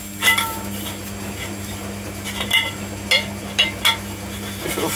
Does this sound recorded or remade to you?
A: recorded